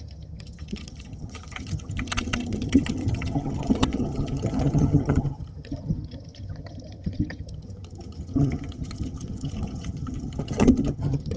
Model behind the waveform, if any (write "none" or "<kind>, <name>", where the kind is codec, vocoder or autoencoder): vocoder, HiFi-GAN